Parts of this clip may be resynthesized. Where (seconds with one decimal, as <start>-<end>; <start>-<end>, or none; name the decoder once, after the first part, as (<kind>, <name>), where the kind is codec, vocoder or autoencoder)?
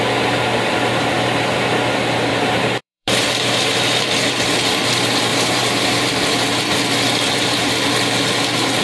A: 2.3-3.2 (vocoder, BigVGAN v2); 5.3-6.1